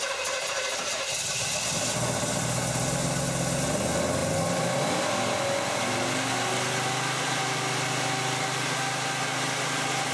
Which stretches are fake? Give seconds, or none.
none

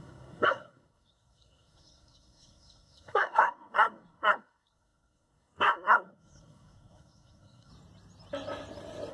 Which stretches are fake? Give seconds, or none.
0.0-7.7 (codec, SNAC)